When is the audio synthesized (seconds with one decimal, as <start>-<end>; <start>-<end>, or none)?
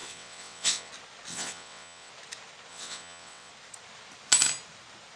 0.0-0.9; 1.3-2.1; 2.7-3.5